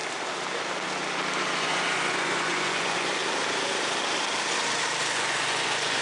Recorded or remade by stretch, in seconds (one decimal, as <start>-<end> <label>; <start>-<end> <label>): 0.0-1.6 recorded; 1.6-3.2 remade; 3.2-5.1 recorded; 5.1-6.0 remade